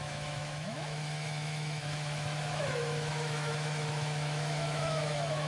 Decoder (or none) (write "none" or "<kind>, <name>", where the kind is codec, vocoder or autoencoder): autoencoder, DAC-VAE